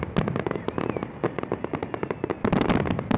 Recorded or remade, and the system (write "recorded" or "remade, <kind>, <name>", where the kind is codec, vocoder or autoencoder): recorded